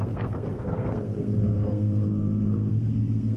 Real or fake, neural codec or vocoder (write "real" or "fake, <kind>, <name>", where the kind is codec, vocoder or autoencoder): fake, codec, SNAC